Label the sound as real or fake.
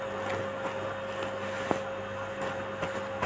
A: real